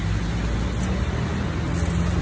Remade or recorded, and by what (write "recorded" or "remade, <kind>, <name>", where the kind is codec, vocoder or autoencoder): recorded